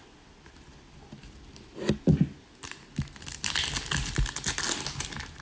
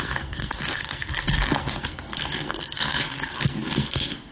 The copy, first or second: second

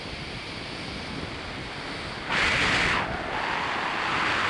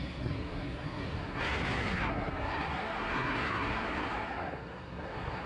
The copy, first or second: second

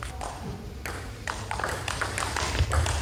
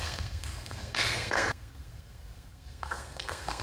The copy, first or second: second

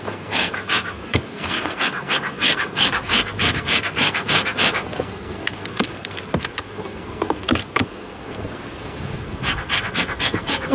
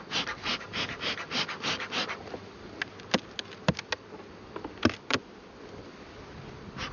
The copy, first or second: first